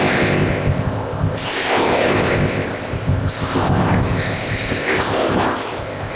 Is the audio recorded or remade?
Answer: remade